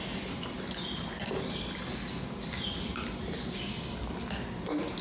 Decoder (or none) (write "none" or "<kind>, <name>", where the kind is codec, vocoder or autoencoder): none